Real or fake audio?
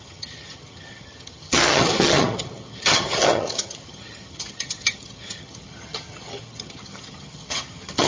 fake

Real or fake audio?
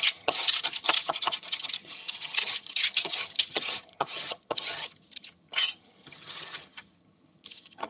fake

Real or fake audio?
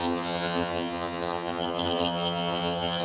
fake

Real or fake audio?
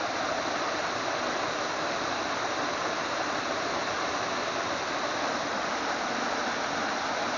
real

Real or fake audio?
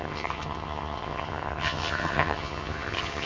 fake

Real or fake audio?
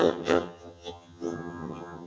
fake